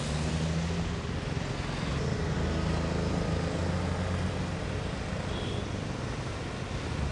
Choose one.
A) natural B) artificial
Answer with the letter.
A